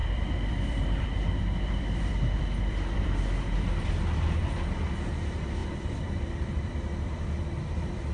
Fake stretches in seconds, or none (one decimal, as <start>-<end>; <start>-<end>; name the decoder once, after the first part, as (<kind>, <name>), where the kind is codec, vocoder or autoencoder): 0.0-4.5 (vocoder, BigVGAN v2); 5.6-8.1